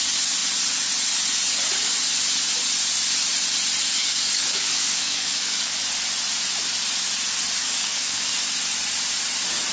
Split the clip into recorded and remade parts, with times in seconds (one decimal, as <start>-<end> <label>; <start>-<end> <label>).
0.0-4.0 recorded; 4.0-5.8 remade; 5.8-7.6 recorded; 7.6-8.3 remade; 8.3-9.7 recorded